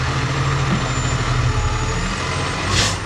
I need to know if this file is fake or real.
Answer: real